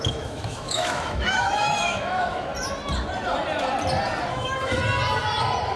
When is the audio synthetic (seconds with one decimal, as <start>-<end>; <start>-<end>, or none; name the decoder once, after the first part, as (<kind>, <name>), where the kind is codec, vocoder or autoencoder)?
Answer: 0.0-2.5 (autoencoder, DAC-VAE); 4.3-4.8